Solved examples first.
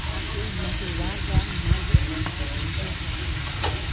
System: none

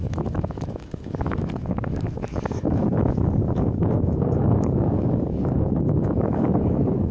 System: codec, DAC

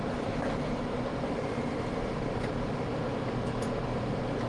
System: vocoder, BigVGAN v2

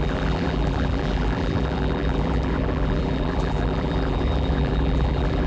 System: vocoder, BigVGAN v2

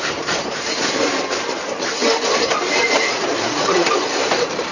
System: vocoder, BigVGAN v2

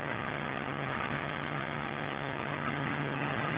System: vocoder, HiFi-GAN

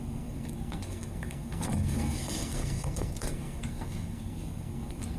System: codec, SNAC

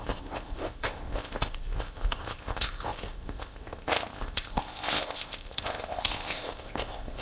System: codec, ZipCodec